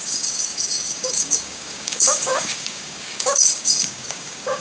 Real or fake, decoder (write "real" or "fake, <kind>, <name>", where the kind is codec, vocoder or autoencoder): fake, codec, DAC